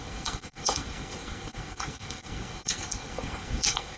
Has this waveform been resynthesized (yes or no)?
yes